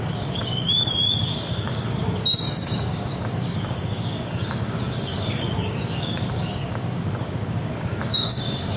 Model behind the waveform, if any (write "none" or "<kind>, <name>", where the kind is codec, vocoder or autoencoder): codec, DAC